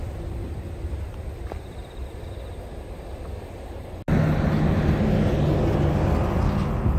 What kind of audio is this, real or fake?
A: real